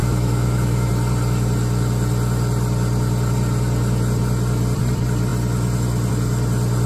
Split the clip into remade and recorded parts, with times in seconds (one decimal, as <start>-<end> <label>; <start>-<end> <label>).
0.0-0.9 remade; 0.9-6.9 recorded